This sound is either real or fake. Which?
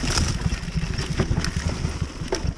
real